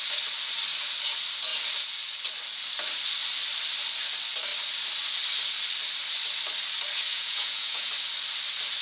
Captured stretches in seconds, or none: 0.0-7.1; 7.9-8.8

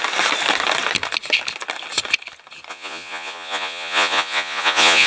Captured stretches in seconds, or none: 0.0-2.7

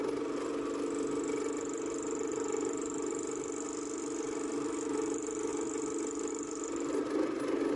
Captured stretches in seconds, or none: 0.0-7.8

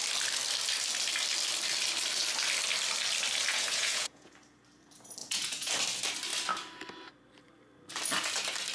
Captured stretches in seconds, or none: 0.0-3.5; 4.3-5.2; 5.7-8.7

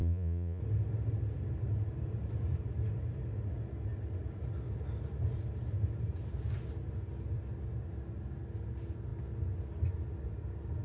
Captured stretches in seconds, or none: 0.6-10.8

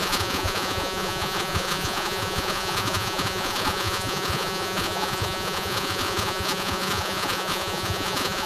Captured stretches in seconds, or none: none